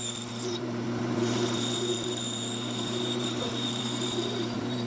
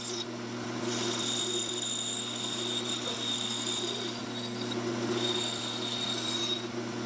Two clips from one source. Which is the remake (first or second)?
first